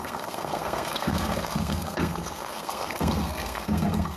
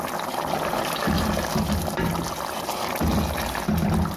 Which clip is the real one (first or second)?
second